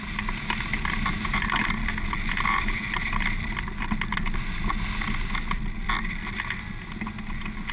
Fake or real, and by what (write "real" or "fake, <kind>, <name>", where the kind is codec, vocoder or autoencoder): real